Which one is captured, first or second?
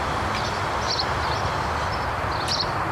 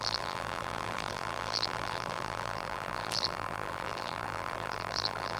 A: first